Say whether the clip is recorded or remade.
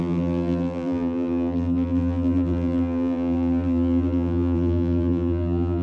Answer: remade